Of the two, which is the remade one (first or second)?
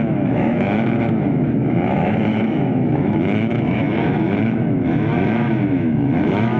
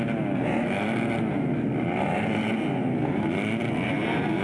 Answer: first